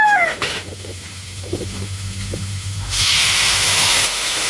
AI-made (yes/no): yes